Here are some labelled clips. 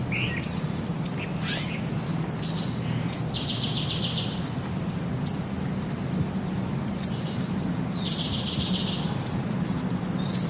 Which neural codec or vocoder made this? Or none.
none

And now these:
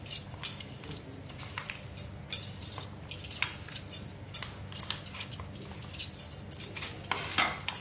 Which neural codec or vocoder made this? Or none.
none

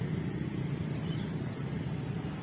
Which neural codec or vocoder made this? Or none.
none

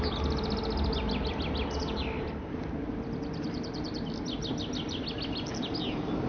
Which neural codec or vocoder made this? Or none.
none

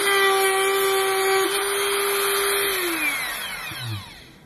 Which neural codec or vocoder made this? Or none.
none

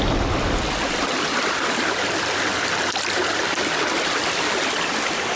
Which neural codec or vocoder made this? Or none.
none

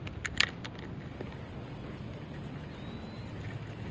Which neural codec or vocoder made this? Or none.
none